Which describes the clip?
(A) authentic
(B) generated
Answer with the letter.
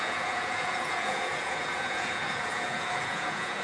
B